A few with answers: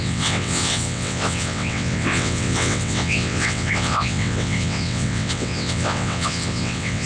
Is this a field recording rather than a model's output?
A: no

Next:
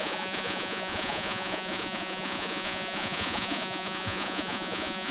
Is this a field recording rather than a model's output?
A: no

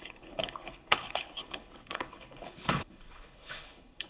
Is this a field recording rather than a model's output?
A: no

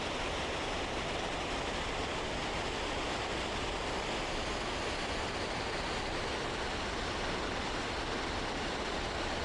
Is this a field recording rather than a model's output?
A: yes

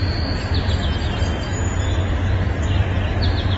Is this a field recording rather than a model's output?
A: yes